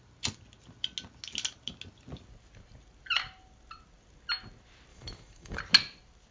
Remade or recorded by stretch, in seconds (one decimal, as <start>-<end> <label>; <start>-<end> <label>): 0.0-4.9 recorded; 4.9-5.6 remade; 5.6-6.3 recorded